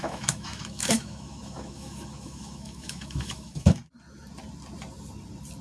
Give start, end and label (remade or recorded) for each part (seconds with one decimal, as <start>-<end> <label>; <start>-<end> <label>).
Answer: 0.0-3.8 remade; 3.8-5.6 recorded